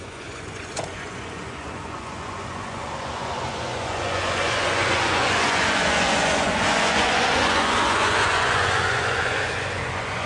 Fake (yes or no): yes